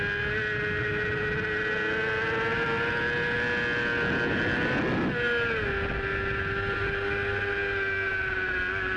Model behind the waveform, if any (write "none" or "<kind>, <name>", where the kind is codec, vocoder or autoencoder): none